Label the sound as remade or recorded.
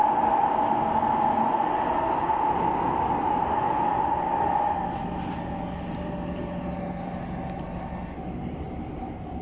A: recorded